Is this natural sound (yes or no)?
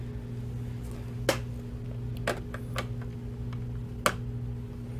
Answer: yes